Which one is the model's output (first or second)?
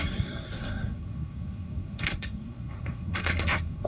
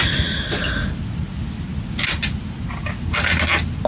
first